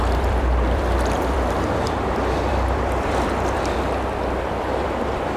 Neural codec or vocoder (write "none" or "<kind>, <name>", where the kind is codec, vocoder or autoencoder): vocoder, BigVGAN v2